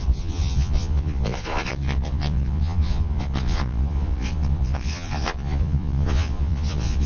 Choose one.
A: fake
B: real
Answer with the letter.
A